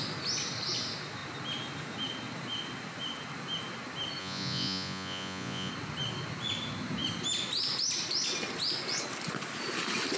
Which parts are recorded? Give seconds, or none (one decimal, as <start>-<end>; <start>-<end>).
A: 0.0-4.2; 5.7-10.2